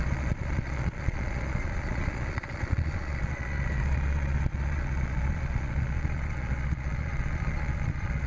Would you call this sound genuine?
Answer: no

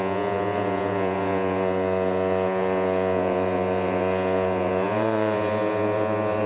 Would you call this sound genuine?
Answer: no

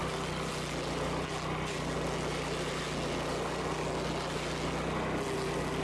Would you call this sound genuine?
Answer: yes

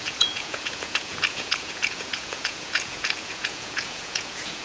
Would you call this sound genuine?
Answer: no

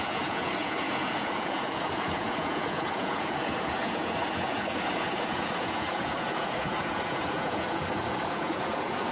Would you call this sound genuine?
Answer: no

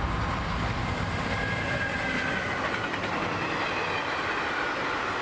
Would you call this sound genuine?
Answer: yes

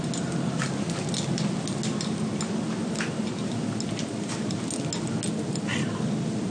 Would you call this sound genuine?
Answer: yes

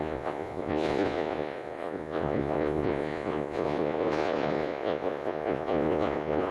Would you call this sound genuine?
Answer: no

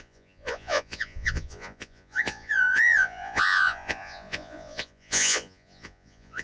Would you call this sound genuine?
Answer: no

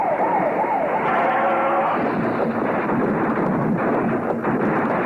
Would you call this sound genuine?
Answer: yes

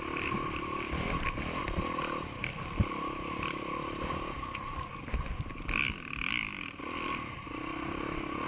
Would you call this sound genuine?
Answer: yes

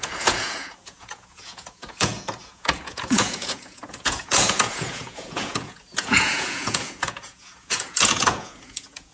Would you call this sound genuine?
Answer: no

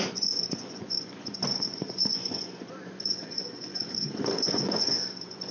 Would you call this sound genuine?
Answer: no